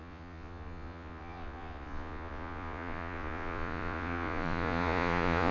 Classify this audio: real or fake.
fake